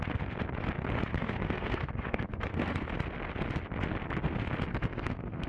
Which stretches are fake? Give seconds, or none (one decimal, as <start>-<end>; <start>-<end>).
1.1-2.9; 4.7-5.5